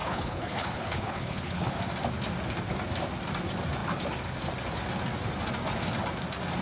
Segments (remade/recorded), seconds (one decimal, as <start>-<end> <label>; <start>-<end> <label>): 0.0-1.7 remade; 1.7-6.6 recorded